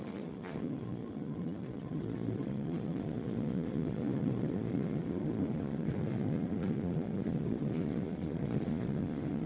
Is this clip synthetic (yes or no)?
yes